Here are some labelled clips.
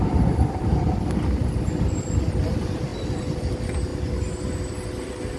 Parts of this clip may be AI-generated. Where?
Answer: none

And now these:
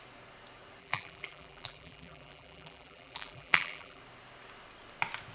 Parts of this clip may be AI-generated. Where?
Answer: 0.8-4.0 (vocoder, BigVGAN v2)

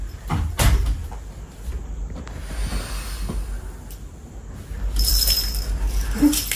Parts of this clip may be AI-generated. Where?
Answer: none